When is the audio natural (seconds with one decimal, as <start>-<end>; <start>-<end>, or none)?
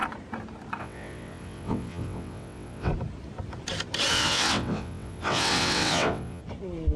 0.0-0.8; 2.9-4.1; 6.4-7.0